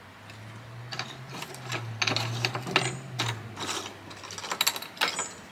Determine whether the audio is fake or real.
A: real